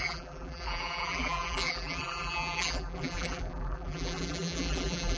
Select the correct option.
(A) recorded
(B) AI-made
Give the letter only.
B